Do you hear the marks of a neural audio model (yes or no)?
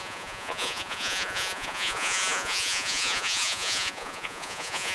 yes